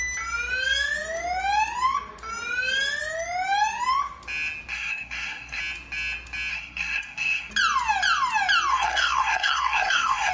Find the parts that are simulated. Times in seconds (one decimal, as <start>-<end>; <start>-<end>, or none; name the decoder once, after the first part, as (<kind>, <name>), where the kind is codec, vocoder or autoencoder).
4.7-5.6 (codec, SNAC); 6.5-7.5; 8.7-10.3